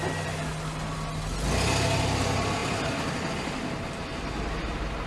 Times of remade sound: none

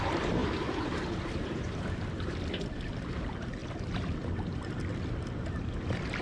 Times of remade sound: 0.4-2.7 (vocoder, BigVGAN v2); 3.6-4.9

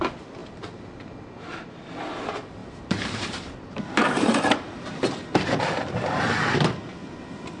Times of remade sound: 2.6-5.0 (vocoder, BigVGAN v2)

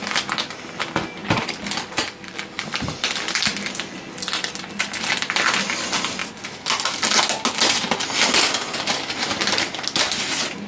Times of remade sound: 1.2-4.8 (vocoder, BigVGAN v2)

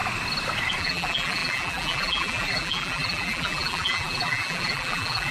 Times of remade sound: 0.8-5.3 (vocoder, BigVGAN v2)

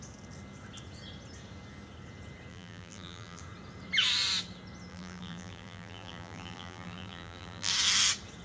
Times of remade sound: 2.5-3.4 (vocoder, BigVGAN v2); 4.9-7.7